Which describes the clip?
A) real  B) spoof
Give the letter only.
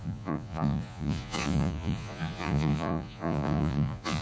B